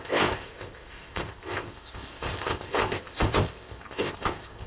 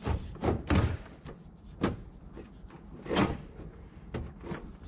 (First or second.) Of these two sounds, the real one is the second